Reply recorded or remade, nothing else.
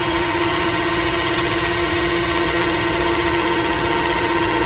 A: remade